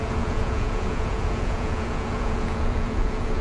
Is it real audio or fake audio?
fake